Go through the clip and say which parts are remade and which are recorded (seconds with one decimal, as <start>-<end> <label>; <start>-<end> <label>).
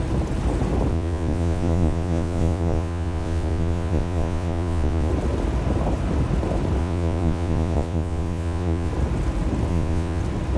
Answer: 0.0-0.9 recorded; 0.9-5.1 remade; 5.1-6.8 recorded; 6.8-8.9 remade; 8.9-9.7 recorded; 9.7-10.2 remade; 10.2-10.6 recorded